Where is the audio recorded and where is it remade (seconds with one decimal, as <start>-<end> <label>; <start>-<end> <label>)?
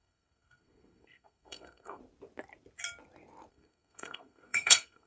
0.0-2.0 remade; 2.0-3.5 recorded; 3.5-5.1 remade